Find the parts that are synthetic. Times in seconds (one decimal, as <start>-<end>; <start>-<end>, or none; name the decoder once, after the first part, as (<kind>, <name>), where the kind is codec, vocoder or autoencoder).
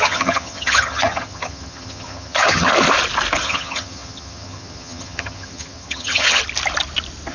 0.0-2.7 (vocoder, HiFi-GAN); 3.4-6.4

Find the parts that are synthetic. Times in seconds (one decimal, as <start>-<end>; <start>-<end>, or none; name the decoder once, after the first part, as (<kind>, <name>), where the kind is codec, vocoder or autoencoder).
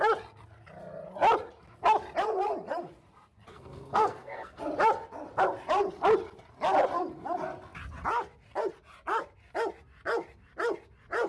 3.5-4.6 (codec, SNAC)